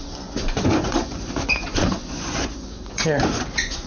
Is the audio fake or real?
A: fake